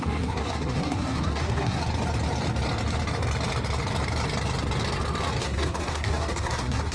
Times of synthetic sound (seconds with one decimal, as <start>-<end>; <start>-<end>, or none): 0.0-1.8; 5.4-6.9